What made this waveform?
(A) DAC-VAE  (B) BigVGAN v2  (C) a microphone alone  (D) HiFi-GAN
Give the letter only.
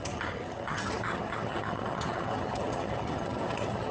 D